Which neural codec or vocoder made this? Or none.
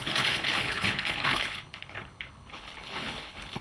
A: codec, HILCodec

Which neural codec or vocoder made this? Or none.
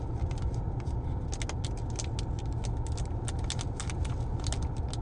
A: none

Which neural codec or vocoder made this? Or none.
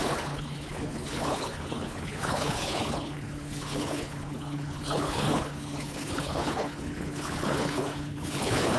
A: codec, HILCodec